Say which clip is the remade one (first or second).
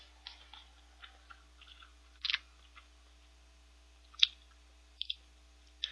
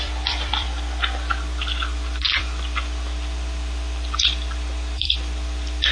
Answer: second